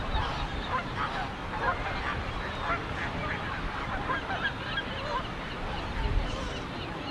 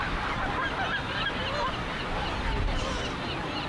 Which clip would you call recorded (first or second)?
second